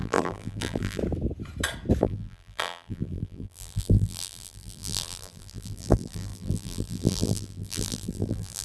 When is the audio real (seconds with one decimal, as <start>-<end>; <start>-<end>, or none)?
1.0-2.0